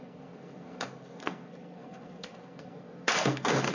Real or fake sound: fake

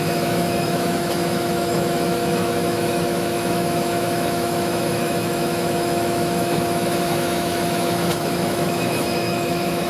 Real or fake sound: fake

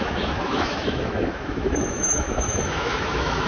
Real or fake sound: fake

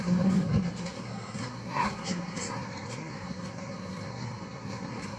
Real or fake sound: fake